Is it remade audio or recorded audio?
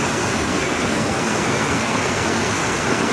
remade